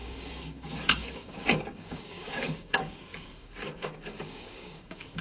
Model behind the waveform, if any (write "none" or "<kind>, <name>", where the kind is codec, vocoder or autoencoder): codec, DAC